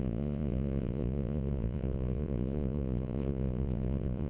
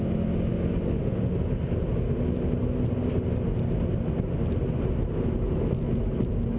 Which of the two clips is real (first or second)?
second